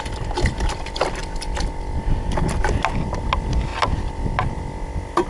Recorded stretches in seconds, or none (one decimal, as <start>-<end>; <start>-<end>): 0.0-5.3